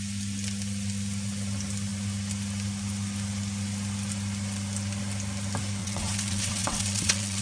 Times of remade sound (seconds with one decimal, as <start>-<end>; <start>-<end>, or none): 5.8-7.4